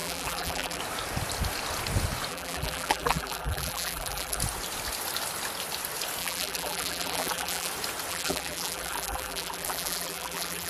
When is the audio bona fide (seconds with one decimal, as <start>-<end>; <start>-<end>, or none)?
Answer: 0.8-2.3; 4.4-6.2; 7.7-8.1